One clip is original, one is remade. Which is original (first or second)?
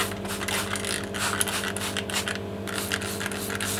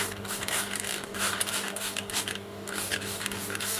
first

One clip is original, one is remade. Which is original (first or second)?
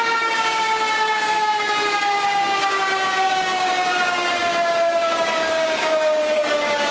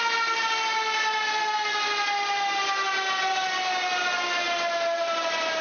second